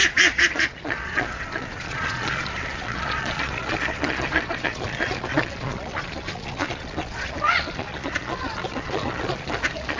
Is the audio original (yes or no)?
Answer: no